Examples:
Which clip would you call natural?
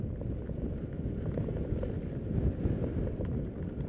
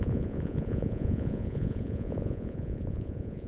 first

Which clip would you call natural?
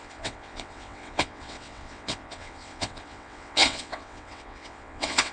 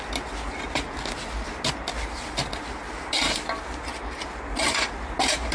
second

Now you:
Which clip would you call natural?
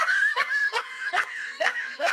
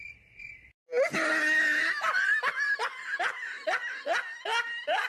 second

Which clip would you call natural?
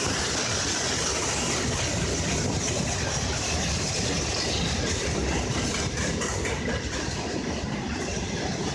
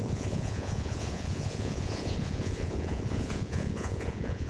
first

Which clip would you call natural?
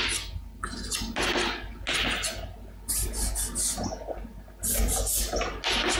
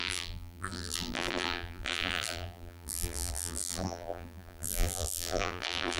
first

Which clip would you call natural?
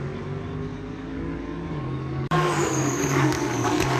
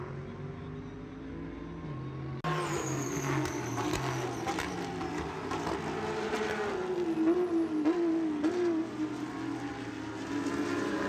second